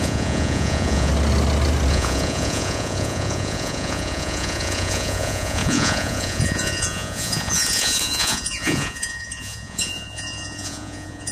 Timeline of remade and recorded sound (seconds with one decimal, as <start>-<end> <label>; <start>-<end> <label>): 0.0-1.1 remade; 1.1-1.9 recorded; 1.9-11.3 remade